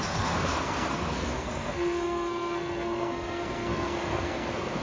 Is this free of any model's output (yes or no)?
no